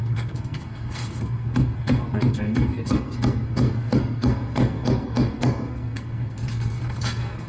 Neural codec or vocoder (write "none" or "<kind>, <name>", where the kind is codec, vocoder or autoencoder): codec, SNAC